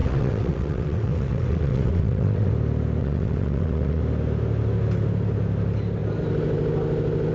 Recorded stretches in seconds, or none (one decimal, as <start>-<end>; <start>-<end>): 2.5-3.0; 4.0-7.3